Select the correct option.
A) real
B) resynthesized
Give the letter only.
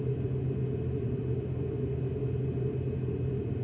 A